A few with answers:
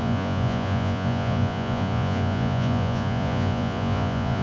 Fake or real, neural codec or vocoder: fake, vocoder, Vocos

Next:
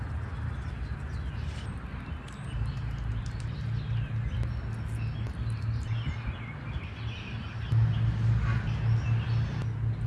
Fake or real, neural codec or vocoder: real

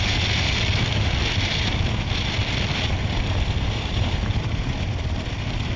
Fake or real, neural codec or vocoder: real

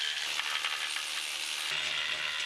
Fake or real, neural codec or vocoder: real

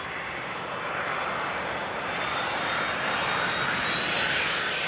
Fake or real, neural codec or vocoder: real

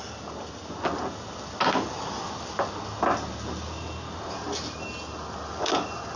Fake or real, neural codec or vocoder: real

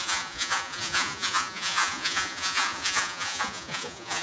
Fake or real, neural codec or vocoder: fake, vocoder, Vocos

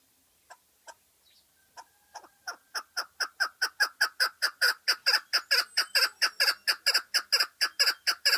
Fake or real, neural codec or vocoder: real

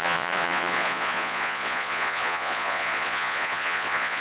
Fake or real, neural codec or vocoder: fake, vocoder, Vocos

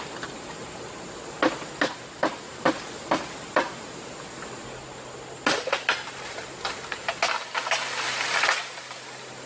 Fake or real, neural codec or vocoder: real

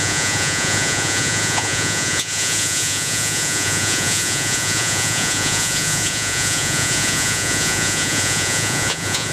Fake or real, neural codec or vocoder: fake, vocoder, Vocos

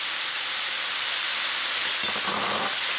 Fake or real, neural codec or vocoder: real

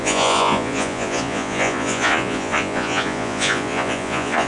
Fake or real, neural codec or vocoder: fake, vocoder, Vocos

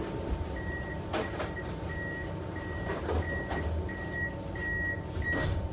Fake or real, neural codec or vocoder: real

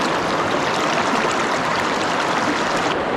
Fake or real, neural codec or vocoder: real